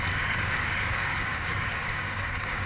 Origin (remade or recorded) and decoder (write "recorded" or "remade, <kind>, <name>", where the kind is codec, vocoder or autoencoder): remade, codec, DAC